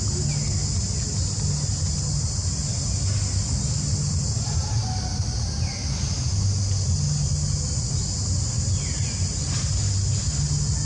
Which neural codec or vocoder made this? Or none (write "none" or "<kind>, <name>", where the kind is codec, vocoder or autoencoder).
none